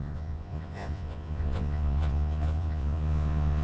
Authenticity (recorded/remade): remade